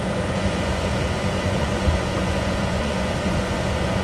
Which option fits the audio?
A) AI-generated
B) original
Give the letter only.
A